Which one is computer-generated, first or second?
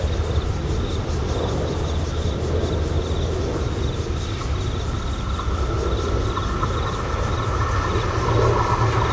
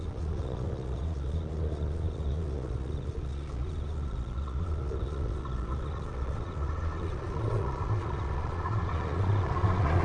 second